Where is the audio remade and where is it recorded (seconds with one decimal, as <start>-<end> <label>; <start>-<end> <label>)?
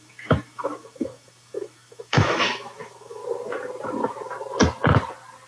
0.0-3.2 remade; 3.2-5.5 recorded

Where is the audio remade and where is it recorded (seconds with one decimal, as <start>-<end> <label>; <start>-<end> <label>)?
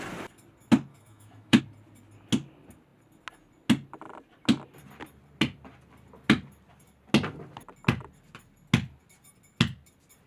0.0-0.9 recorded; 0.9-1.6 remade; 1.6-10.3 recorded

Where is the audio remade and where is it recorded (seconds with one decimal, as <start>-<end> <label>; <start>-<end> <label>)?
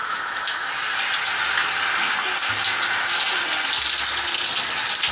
0.0-0.7 remade; 0.7-5.1 recorded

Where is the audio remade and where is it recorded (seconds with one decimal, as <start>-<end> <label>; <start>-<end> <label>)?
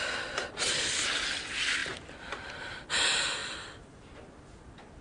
0.0-5.0 recorded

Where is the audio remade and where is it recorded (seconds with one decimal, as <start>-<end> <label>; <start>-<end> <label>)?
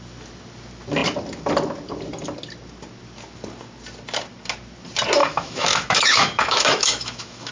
0.0-5.2 recorded; 5.2-7.5 remade